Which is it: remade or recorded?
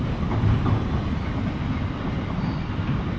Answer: recorded